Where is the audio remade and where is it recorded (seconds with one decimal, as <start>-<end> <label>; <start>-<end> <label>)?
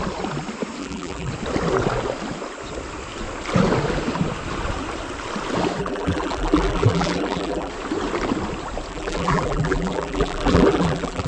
0.0-0.8 recorded; 0.8-1.3 remade; 1.3-5.8 recorded; 5.8-7.7 remade; 7.7-8.9 recorded; 8.9-11.3 remade